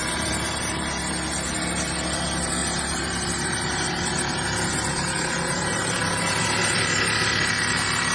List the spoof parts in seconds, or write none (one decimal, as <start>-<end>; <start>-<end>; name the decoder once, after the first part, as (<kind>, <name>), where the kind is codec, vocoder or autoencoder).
0.0-1.0 (vocoder, BigVGAN v2); 2.6-7.5